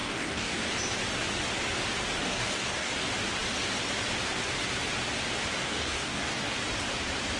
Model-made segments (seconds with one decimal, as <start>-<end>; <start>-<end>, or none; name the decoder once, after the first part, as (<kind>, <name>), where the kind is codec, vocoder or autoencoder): 0.0-0.7 (codec, DAC); 2.2-2.9; 5.6-6.5